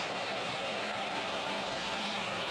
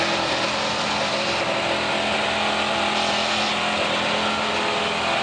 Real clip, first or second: second